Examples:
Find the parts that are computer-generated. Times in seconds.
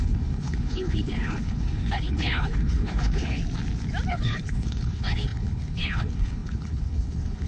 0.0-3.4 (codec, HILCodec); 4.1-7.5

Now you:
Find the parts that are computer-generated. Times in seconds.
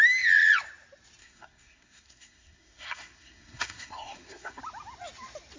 1.2-4.6 (codec, SNAC)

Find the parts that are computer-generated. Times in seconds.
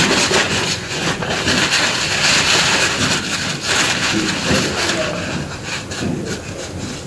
0.4-1.3 (vocoder, Vocos)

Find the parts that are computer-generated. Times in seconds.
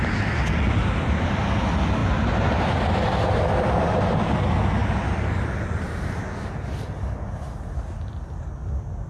0.8-1.4 (vocoder, BigVGAN v2); 2.0-2.6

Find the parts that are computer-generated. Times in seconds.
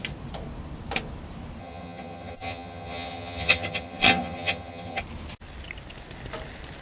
1.6-5.0 (vocoder, HiFi-GAN)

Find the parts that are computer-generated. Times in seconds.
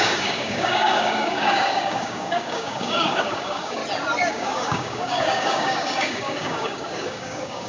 0.0-3.8 (codec, DAC); 4.3-7.7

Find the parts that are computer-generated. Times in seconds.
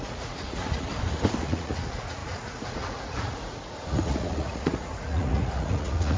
0.0-0.9 (vocoder, Vocos); 1.4-6.2